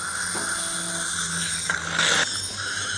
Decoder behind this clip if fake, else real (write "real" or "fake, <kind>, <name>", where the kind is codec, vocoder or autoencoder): real